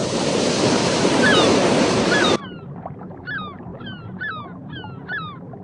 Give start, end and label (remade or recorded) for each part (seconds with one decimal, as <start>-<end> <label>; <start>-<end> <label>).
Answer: 0.0-3.3 remade; 3.3-5.6 recorded